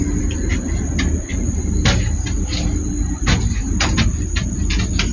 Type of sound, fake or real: real